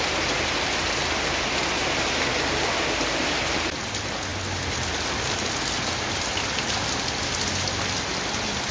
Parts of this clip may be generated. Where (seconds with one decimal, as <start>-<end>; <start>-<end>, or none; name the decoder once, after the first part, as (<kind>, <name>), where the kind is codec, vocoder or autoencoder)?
none